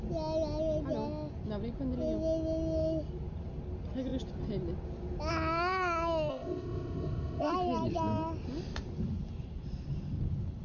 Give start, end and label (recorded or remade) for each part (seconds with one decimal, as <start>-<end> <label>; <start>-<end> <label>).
0.0-6.3 recorded; 6.3-7.5 remade; 7.5-10.6 recorded